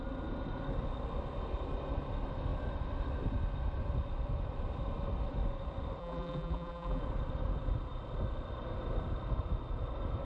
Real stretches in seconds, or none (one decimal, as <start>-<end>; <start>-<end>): 0.0-6.0; 7.0-10.2